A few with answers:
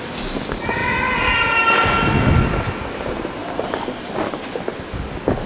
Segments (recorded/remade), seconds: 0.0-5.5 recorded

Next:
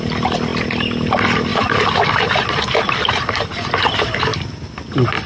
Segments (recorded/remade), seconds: 0.0-0.5 remade; 0.5-1.1 recorded; 1.1-5.3 remade

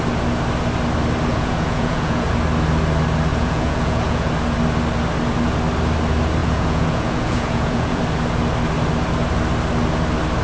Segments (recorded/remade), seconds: 0.0-1.3 recorded; 1.3-2.3 remade; 2.3-3.3 recorded; 3.3-4.3 remade; 4.3-6.4 recorded; 6.4-8.0 remade; 8.0-10.4 recorded

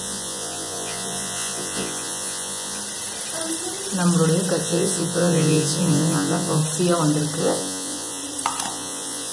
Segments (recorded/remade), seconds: 0.0-2.8 remade; 2.8-4.6 recorded; 4.6-6.6 remade; 6.6-7.4 recorded; 7.4-8.2 remade; 8.2-8.7 recorded; 8.7-9.3 remade

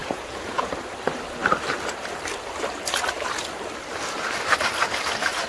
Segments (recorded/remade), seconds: 0.0-0.7 remade; 0.7-5.5 recorded

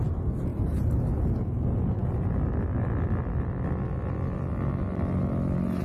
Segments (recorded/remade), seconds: 0.0-5.8 recorded

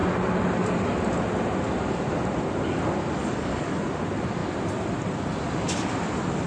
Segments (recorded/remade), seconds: 0.0-3.2 recorded; 3.2-3.8 remade; 3.8-6.5 recorded

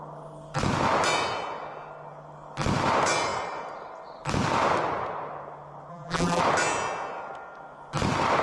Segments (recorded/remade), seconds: 0.0-5.9 recorded; 5.9-6.4 remade; 6.4-8.4 recorded